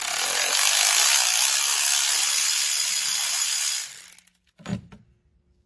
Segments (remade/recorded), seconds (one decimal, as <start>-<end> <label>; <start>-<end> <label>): 0.0-5.7 recorded